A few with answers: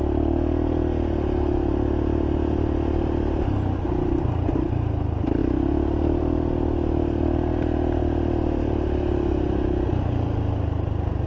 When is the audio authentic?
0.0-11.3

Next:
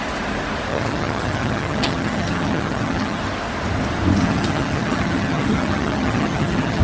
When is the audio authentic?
0.0-0.7; 3.2-4.2

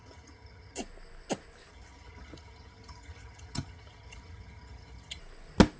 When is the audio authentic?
0.8-1.7; 5.2-5.8

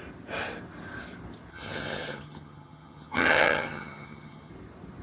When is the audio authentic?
0.0-1.5; 4.5-5.0